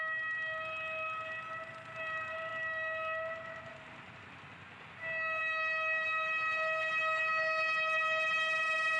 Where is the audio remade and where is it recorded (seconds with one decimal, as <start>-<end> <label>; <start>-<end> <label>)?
0.0-9.0 recorded